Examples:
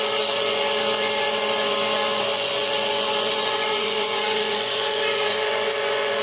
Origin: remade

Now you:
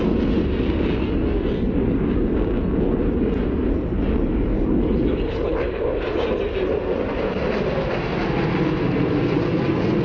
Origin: recorded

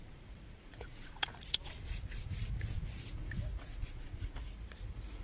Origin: remade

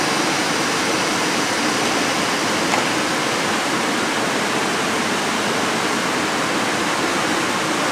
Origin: recorded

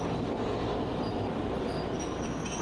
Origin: recorded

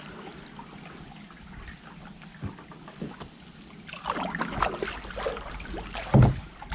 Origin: recorded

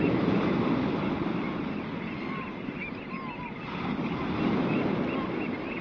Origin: recorded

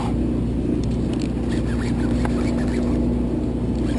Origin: recorded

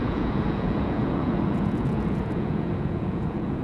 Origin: remade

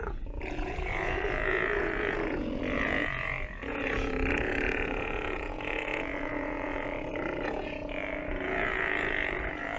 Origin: remade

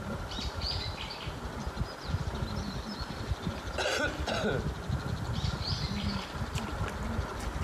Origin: recorded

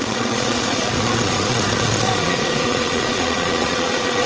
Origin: remade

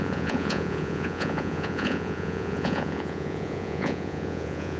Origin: remade